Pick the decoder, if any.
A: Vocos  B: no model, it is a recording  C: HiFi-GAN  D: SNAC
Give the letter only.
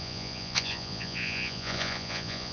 A